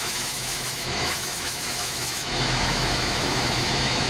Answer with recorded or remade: remade